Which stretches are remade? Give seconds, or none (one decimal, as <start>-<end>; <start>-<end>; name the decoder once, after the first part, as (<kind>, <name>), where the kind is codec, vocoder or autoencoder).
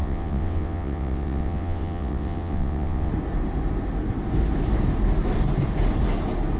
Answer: 0.0-3.1 (vocoder, WaveNeXt)